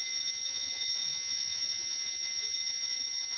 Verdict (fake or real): fake